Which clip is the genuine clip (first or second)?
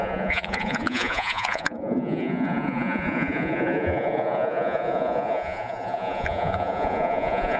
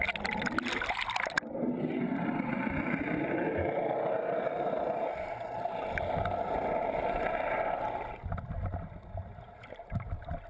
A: second